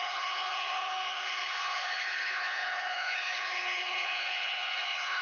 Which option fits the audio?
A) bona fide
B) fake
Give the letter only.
B